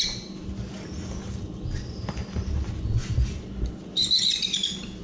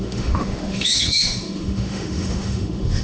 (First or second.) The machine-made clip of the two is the second